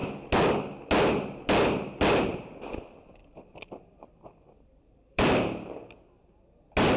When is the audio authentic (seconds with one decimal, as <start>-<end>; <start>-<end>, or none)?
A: 0.0-3.2; 6.1-7.0